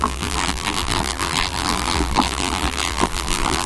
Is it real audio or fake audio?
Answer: fake